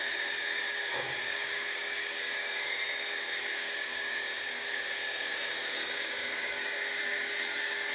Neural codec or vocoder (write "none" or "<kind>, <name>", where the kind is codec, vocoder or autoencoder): codec, DAC